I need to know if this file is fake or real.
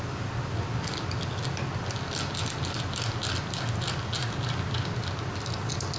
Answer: real